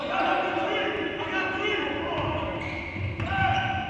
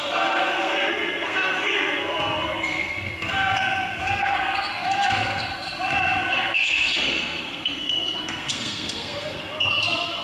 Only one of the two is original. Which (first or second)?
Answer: first